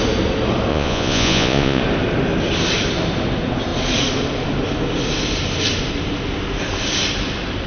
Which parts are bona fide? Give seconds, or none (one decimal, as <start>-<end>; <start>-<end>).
0.0-0.7; 1.8-7.7